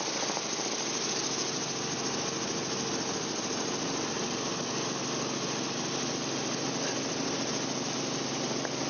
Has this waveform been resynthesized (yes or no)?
no